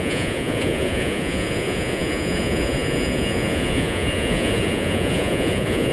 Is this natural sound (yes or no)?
no